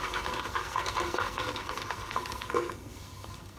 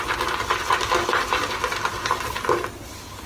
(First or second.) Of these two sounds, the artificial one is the first